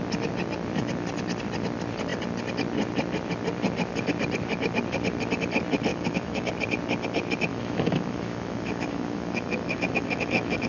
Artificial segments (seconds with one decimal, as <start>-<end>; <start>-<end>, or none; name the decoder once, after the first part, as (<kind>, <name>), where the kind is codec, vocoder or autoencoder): 5.9-6.5 (autoencoder, DAC-VAE); 7.5-10.7